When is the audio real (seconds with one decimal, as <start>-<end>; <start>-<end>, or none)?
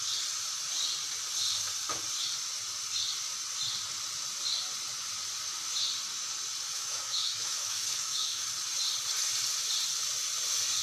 0.0-6.7; 8.4-10.8